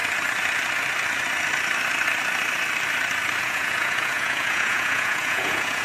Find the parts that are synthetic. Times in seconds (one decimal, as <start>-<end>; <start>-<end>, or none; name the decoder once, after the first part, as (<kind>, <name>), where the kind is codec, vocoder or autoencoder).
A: 3.4-5.8 (vocoder, Vocos)